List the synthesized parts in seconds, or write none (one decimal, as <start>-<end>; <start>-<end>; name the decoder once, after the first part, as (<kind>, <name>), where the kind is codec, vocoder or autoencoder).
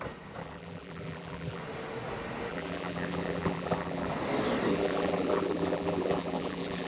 0.4-1.6 (vocoder, BigVGAN v2); 2.5-4.1; 4.7-6.9